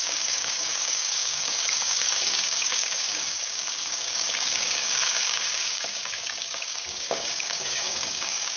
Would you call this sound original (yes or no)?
no